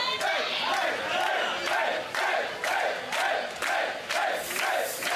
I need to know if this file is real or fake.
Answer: real